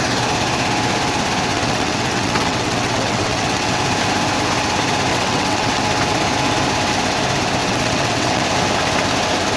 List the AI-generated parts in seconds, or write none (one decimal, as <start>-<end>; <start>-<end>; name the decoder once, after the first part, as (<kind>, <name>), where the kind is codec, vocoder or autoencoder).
1.5-3.8 (vocoder, WaveNeXt); 5.1-5.8; 7.6-8.4